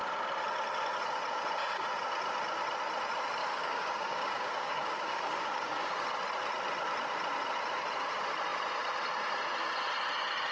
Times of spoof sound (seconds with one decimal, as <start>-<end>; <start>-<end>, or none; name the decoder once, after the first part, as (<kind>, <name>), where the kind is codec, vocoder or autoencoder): 3.4-5.9 (codec, DAC)